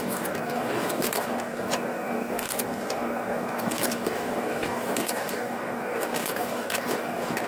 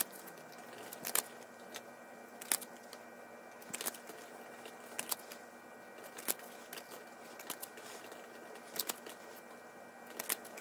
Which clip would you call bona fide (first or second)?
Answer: second